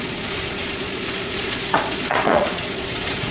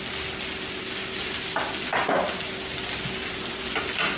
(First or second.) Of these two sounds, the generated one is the first